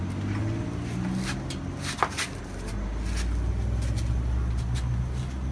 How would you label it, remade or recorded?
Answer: recorded